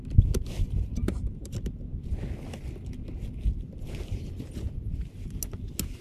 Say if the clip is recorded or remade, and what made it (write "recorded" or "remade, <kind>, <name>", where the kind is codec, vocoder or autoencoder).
recorded